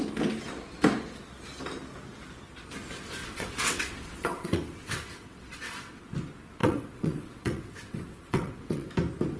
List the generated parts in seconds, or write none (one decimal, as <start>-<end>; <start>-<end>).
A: 3.2-6.0; 6.6-8.9